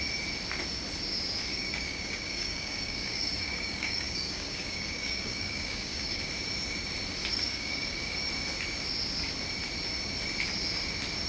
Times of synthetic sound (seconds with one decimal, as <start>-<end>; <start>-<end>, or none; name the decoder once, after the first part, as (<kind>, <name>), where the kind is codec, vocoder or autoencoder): 1.5-6.2 (codec, DAC); 7.3-8.2